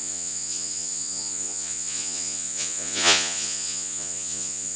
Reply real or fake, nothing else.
fake